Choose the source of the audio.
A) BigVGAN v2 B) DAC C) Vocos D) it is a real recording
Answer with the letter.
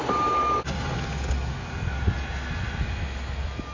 D